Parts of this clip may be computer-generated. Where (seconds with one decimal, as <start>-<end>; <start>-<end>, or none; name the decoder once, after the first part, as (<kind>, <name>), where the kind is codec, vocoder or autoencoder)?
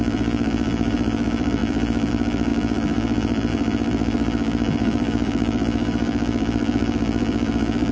0.0-7.9 (vocoder, BigVGAN v2)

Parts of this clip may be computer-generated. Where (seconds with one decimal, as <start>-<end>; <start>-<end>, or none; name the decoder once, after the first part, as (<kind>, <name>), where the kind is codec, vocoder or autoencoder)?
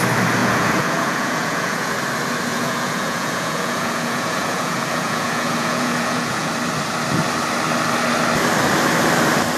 0.4-1.9 (vocoder, Vocos); 2.5-6.5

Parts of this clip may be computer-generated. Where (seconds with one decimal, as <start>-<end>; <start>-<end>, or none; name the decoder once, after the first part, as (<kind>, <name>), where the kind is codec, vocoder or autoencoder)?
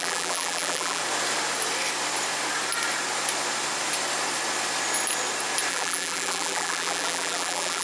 0.0-1.0 (vocoder, BigVGAN v2); 5.7-7.8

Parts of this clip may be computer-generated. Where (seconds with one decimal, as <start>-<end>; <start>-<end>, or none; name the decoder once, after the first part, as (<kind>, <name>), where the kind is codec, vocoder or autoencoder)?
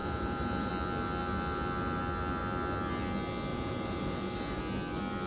0.0-0.7 (vocoder, Vocos); 3.5-4.6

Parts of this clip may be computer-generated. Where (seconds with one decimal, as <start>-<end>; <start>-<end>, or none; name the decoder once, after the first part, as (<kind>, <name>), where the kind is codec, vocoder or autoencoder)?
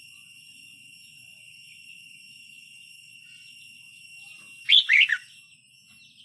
0.0-4.1 (vocoder, Vocos)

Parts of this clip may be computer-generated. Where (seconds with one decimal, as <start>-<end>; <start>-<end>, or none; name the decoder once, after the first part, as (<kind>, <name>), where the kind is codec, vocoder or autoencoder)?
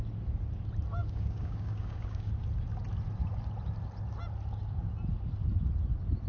1.0-2.3 (codec, DAC)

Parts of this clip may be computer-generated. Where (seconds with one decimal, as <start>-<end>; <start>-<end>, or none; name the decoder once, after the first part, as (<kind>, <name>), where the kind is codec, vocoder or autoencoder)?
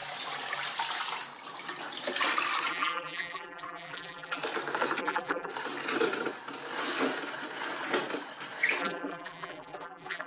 2.7-4.4 (vocoder, BigVGAN v2); 5.0-5.5; 8.8-10.3